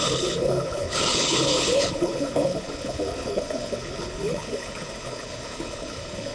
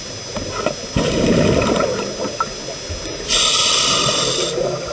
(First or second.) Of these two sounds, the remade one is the first